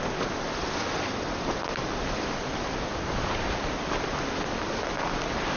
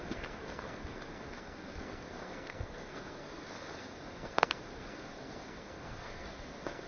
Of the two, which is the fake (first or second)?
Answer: second